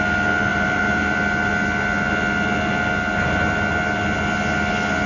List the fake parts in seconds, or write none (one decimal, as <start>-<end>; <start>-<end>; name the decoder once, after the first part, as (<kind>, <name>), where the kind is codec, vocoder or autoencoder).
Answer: 0.5-1.1 (vocoder, BigVGAN v2)